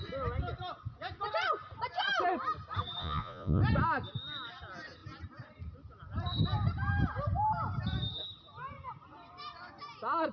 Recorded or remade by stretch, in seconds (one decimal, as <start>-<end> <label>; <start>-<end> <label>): 0.0-3.0 recorded; 3.0-3.6 remade; 3.6-10.3 recorded